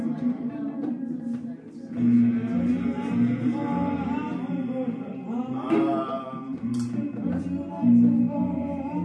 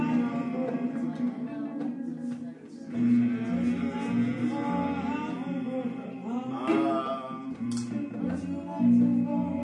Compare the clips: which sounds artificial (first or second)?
first